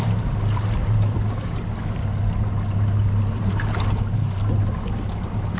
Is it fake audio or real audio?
real